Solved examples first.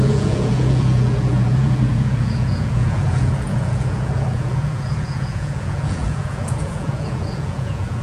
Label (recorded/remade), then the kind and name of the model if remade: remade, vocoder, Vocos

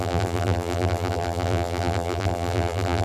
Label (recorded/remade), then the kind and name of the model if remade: remade, vocoder, BigVGAN v2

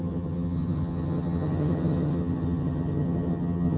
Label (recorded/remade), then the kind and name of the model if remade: remade, vocoder, HiFi-GAN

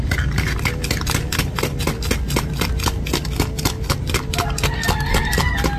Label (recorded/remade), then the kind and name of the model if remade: recorded